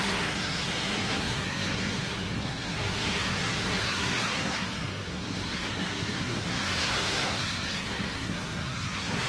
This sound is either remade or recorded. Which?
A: remade